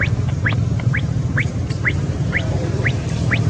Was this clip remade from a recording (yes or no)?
yes